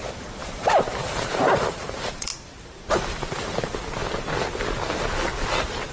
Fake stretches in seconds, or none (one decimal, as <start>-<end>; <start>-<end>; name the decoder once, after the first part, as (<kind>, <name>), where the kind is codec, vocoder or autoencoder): 0.0-2.3 (vocoder, BigVGAN v2); 2.9-4.0